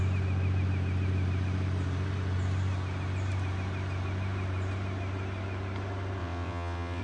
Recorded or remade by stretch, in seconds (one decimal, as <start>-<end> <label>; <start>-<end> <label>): 0.0-6.2 recorded; 6.2-7.0 remade